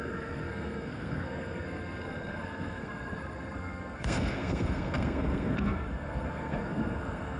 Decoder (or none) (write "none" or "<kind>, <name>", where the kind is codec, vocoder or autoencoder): codec, SNAC